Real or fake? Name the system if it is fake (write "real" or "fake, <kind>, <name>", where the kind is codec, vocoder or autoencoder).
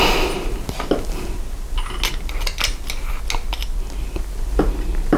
real